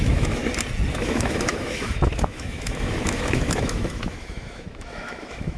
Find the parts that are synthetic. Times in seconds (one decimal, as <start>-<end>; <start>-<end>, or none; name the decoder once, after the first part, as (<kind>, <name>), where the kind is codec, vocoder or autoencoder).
0.0-0.4 (autoencoder, DAC-VAE); 0.9-5.6